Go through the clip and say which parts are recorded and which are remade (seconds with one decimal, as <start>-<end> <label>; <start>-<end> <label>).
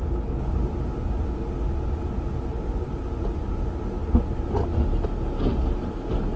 0.0-6.4 recorded